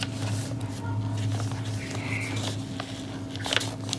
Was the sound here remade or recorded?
recorded